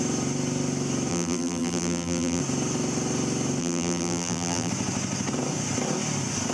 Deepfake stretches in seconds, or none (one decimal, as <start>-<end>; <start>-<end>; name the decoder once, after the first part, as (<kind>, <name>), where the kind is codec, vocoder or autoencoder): 1.1-2.4 (vocoder, BigVGAN v2); 3.6-4.7